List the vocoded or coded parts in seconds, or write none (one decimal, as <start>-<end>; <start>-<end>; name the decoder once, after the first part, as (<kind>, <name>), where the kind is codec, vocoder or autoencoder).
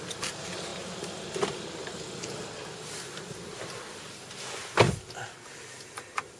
none